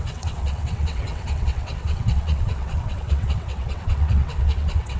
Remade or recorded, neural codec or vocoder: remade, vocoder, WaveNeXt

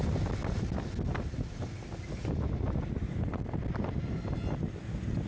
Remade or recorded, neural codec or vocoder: recorded